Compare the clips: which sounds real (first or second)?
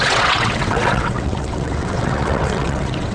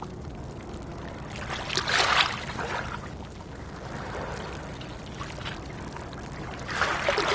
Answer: second